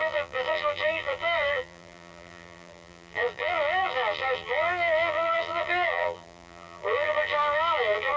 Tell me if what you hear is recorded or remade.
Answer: remade